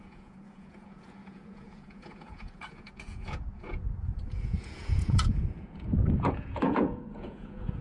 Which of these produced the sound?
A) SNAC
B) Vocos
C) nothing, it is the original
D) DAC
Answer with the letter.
B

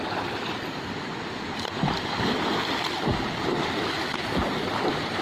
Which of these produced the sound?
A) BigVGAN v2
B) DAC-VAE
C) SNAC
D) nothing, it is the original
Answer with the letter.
D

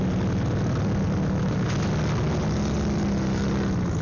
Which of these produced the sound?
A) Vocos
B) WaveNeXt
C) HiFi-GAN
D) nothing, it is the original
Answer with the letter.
D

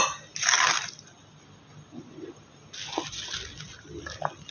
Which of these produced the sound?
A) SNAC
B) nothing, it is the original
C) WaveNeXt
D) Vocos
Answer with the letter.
B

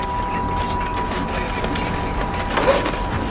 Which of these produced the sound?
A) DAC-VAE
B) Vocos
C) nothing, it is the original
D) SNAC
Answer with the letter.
C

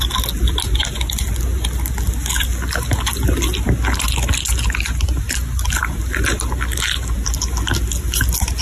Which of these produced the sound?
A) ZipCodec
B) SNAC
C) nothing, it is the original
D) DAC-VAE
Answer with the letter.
C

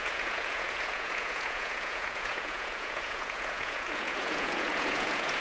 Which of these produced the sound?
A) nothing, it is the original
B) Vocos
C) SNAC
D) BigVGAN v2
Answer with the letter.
B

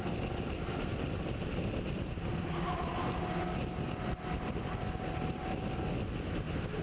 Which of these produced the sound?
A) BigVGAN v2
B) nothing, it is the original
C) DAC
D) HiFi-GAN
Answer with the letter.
B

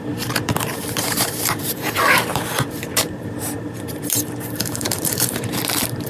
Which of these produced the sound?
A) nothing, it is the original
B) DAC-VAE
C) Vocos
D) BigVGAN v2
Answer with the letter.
D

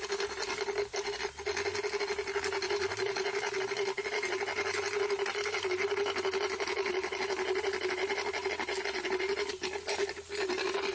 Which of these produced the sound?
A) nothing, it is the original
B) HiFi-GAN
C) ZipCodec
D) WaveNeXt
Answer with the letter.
A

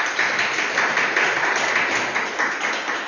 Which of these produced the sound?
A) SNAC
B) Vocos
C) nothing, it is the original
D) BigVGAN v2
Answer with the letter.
C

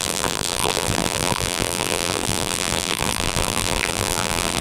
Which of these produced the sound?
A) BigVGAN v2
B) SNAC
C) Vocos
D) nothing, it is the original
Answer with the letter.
A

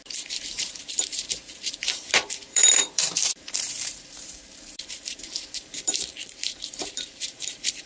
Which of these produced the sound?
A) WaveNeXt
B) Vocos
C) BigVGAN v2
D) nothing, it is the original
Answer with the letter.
C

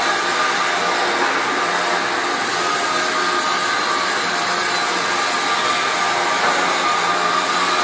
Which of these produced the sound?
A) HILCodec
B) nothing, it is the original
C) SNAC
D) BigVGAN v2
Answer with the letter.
B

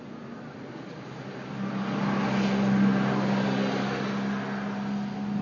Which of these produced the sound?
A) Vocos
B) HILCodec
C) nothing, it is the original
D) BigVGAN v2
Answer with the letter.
C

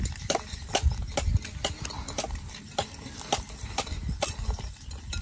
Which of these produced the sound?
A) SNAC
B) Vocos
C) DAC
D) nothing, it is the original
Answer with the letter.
D